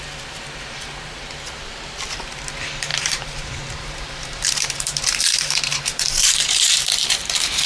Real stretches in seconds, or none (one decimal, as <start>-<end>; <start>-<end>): 0.0-2.9